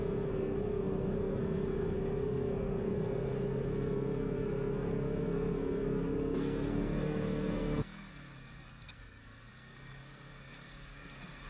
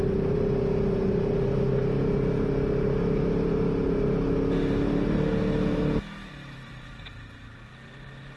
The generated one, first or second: first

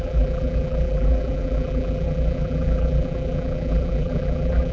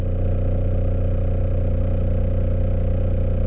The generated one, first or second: first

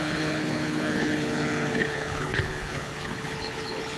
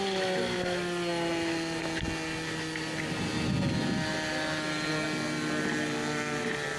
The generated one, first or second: first